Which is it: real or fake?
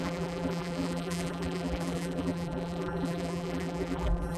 fake